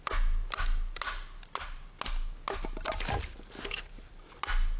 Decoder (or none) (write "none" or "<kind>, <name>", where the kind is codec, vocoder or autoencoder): none